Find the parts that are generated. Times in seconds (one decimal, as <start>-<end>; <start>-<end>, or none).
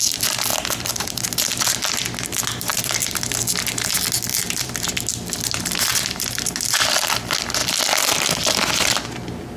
2.7-3.3; 4.3-6.6